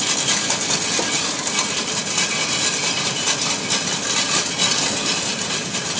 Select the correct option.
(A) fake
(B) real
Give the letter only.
B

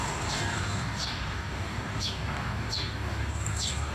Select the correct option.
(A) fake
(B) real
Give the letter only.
A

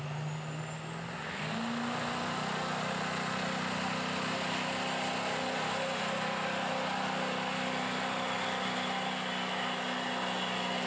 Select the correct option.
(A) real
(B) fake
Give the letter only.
A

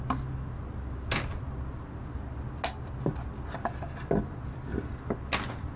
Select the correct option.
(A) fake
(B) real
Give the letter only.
B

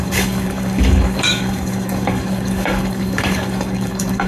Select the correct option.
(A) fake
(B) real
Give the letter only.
A